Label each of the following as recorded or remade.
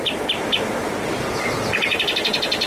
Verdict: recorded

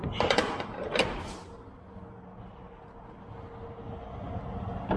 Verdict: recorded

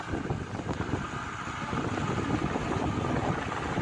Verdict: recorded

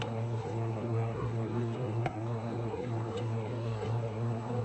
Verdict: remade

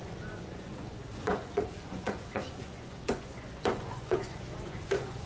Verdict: remade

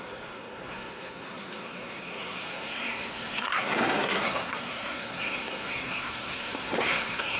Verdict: remade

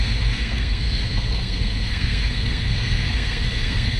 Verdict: remade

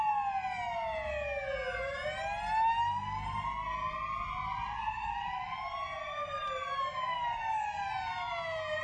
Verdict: recorded